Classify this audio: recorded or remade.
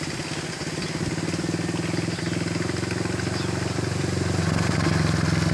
recorded